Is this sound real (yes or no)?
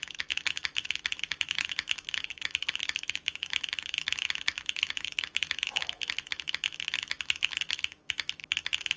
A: no